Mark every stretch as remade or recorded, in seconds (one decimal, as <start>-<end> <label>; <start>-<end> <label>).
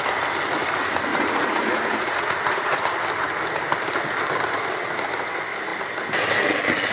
0.0-1.1 recorded; 1.1-2.8 remade; 2.8-6.9 recorded